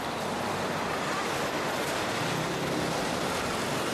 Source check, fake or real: real